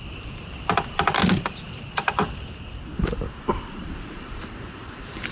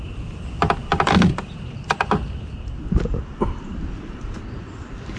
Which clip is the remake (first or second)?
first